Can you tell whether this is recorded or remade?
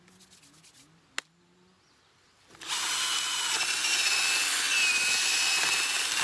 recorded